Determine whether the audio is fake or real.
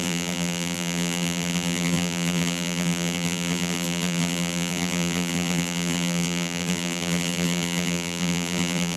fake